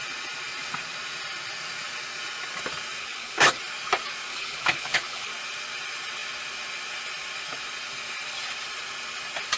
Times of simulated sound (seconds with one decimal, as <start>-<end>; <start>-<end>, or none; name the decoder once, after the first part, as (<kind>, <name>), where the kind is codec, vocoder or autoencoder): 3.0-3.6 (codec, HILCodec); 4.3-5.3

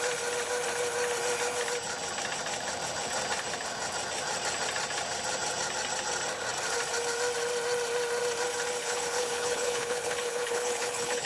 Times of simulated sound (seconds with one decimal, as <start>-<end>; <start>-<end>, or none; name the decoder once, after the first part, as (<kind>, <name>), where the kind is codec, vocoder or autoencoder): 8.8-11.3 (codec, HILCodec)

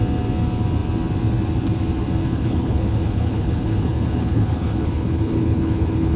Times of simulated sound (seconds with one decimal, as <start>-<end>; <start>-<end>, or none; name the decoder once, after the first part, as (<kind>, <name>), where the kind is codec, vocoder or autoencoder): 2.2-6.2 (codec, HILCodec)

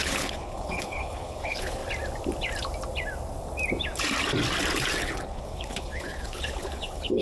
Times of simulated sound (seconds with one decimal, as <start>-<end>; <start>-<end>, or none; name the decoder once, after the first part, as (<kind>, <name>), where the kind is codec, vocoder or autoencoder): 0.0-1.8 (codec, HILCodec); 5.0-7.2